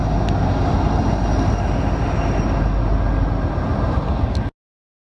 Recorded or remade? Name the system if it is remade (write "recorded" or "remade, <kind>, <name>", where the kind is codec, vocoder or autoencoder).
recorded